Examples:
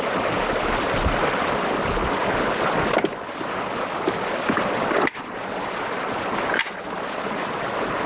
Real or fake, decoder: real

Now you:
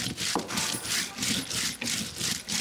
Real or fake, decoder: real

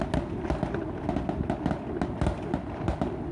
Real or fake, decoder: real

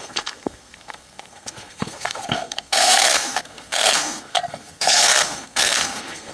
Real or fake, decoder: fake, codec, SNAC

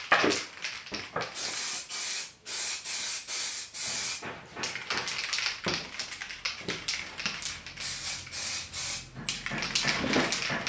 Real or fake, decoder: real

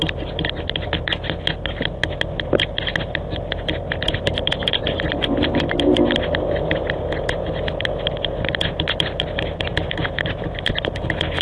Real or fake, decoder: real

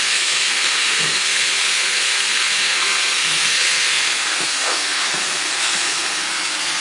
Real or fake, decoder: fake, codec, SNAC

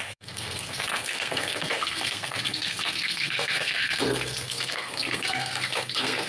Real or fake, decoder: fake, codec, SNAC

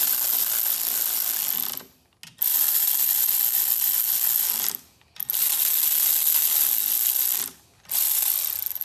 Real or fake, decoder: real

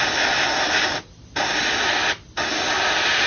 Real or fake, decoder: real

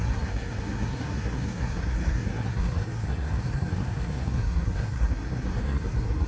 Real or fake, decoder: fake, codec, SNAC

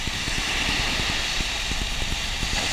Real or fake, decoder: real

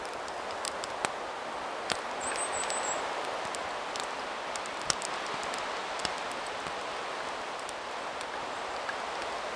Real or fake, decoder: real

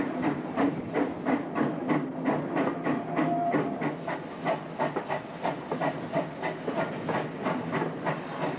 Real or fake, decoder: real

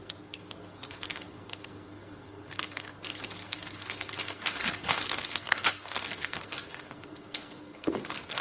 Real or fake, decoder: fake, codec, SNAC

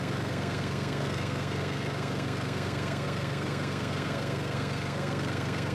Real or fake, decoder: fake, codec, SNAC